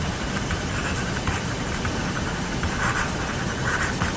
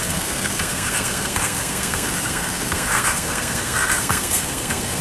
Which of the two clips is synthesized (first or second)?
second